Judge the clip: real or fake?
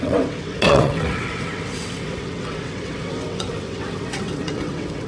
fake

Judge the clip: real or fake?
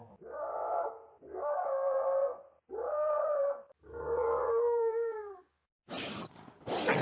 real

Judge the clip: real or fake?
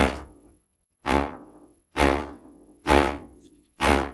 fake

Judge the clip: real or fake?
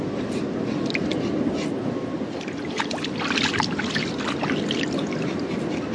real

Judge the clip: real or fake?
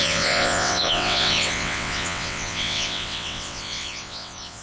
fake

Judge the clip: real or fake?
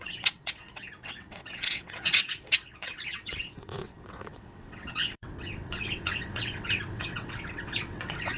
fake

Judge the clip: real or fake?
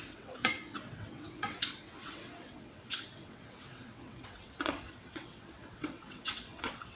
fake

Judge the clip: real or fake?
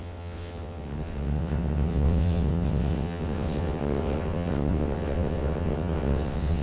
fake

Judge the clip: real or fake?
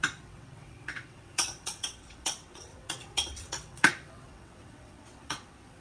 fake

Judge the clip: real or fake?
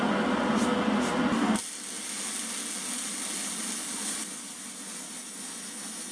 real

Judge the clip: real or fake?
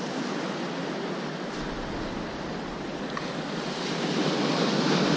real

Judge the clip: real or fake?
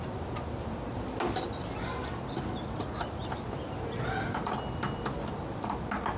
real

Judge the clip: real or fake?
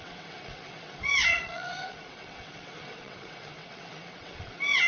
fake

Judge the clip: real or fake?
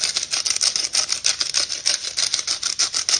real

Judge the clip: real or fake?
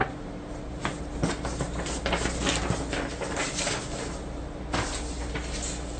real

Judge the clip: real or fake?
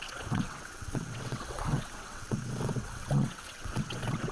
fake